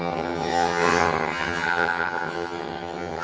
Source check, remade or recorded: remade